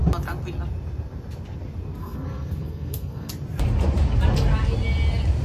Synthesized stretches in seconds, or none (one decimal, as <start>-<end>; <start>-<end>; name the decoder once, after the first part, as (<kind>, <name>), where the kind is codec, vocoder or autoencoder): 2.0-3.3 (codec, SNAC)